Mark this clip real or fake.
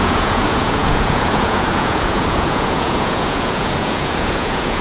fake